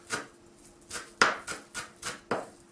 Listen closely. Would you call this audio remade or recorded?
recorded